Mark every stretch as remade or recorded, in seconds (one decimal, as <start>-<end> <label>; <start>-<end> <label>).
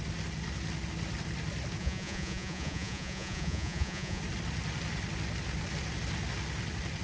0.0-1.8 recorded; 1.8-4.2 remade; 4.2-7.0 recorded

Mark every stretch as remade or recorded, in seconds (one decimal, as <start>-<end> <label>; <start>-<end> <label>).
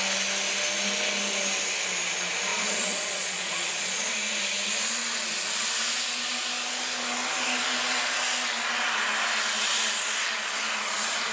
0.0-2.5 recorded; 2.5-4.1 remade; 4.1-11.3 recorded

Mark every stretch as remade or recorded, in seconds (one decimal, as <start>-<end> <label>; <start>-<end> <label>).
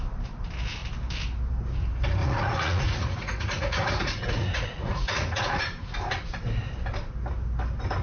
0.0-2.2 recorded; 2.2-5.6 remade; 5.6-8.0 recorded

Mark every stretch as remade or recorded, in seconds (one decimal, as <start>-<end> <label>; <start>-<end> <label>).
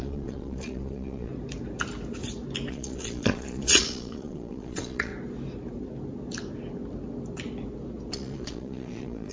0.0-1.3 remade; 1.3-2.7 recorded; 2.7-5.1 remade; 5.1-8.1 recorded; 8.1-9.3 remade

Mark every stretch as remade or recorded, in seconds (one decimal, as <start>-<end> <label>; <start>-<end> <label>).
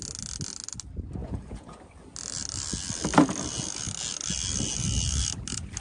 0.0-1.2 recorded; 1.2-1.8 remade; 1.8-5.8 recorded